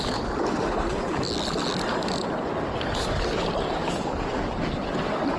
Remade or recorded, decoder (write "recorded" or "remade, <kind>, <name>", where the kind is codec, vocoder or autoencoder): recorded